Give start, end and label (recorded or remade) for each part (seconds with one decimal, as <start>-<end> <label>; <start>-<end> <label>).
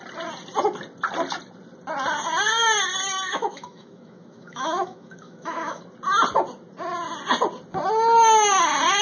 0.0-3.3 recorded; 3.3-5.8 remade; 5.8-9.0 recorded